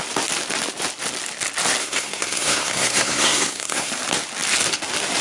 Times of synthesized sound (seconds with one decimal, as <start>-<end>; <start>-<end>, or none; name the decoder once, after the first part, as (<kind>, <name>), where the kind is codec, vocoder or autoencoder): 1.8-3.9 (codec, SNAC)